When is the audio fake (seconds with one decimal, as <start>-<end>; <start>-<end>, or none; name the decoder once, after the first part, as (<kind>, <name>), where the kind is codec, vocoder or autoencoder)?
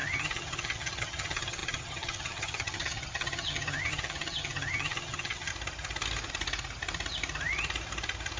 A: 0.0-5.5 (vocoder, HiFi-GAN)